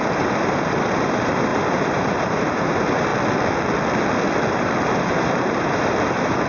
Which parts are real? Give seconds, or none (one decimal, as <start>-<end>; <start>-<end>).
3.1-4.5